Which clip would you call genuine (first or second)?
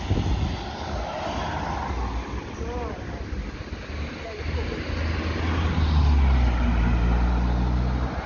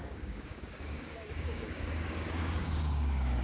first